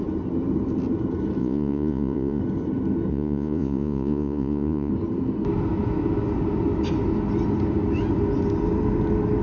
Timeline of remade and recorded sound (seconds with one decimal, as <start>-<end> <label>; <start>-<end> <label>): 0.0-1.4 recorded; 1.4-2.4 remade; 2.4-3.1 recorded; 3.1-4.9 remade; 4.9-9.4 recorded